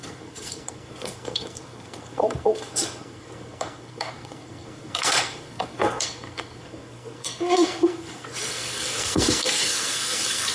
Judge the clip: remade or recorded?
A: remade